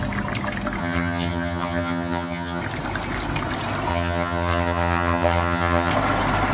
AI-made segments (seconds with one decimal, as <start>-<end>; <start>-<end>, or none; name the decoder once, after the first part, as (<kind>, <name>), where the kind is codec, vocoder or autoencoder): 0.8-2.6 (vocoder, HiFi-GAN); 3.9-5.9